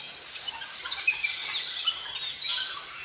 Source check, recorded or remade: recorded